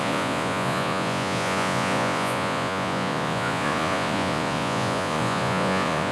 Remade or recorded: remade